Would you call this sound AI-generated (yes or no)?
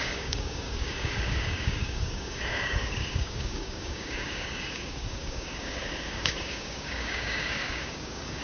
yes